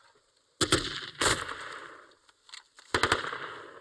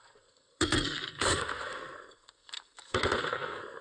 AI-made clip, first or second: second